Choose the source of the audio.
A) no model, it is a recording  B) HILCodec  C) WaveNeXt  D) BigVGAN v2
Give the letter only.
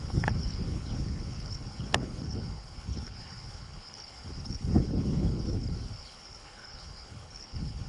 B